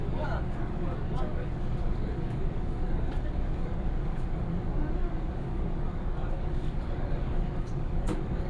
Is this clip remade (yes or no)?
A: yes